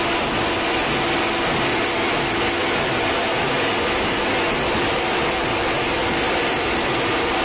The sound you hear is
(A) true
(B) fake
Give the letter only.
A